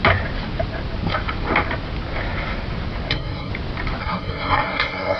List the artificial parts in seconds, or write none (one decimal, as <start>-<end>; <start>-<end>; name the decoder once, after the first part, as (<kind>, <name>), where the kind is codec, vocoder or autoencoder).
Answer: 3.1-3.5 (codec, SNAC); 4.0-5.2